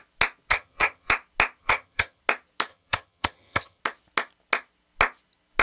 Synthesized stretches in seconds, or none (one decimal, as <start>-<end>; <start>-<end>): 0.5-1.1; 1.6-2.2; 2.7-3.8